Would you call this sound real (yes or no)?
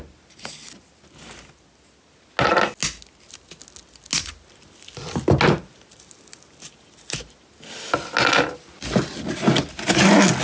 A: yes